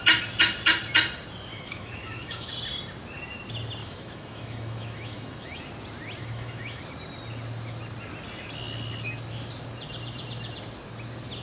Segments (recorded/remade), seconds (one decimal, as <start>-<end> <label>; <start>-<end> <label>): 0.0-1.5 recorded; 1.5-2.5 remade; 2.5-3.8 recorded; 3.8-5.6 remade; 5.6-6.2 recorded; 6.2-6.8 remade; 6.8-11.4 recorded